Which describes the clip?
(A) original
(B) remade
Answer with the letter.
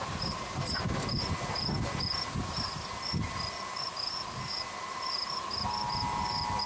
A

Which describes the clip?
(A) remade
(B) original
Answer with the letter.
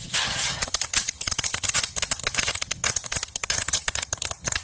A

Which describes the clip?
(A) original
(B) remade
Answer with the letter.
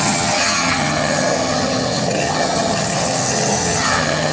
B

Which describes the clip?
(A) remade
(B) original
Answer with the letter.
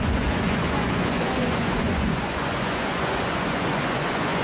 A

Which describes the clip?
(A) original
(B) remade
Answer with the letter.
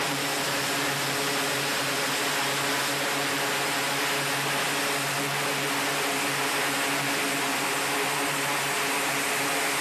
A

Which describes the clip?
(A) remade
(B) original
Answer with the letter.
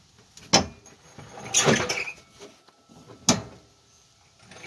B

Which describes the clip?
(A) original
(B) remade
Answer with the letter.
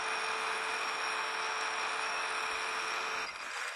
A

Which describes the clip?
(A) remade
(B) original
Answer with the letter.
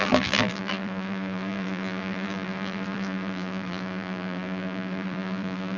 A